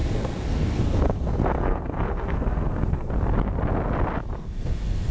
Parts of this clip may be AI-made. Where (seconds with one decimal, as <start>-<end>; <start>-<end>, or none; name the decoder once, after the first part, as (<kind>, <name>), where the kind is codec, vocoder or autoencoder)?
0.0-3.1 (codec, SNAC); 4.4-5.1